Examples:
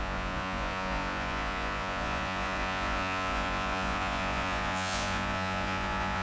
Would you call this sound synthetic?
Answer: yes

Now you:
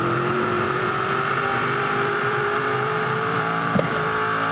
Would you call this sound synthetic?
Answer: yes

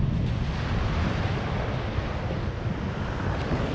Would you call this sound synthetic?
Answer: no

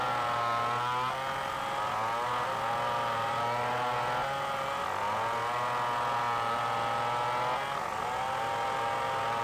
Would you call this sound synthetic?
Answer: no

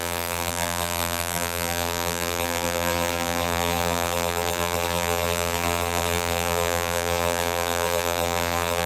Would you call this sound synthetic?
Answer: yes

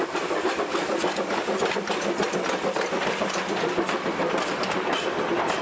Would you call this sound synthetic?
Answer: no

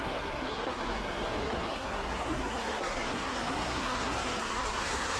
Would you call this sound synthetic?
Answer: yes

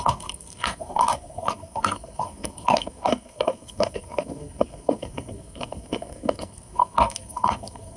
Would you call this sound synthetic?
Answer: yes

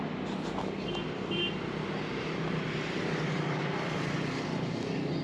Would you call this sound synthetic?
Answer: no